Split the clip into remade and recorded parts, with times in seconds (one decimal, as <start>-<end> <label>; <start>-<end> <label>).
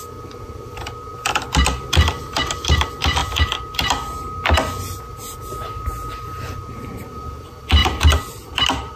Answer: 0.0-1.1 remade; 1.1-2.2 recorded; 2.2-3.2 remade; 3.2-5.0 recorded; 5.0-9.0 remade